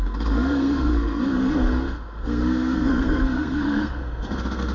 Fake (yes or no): yes